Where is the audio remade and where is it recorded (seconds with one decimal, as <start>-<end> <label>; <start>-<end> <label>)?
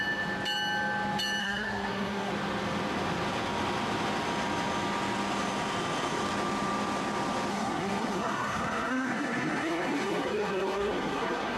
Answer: 0.0-1.4 recorded; 1.4-2.3 remade; 2.3-7.5 recorded; 7.5-11.6 remade